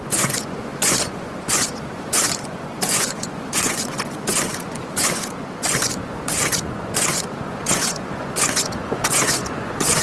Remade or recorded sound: remade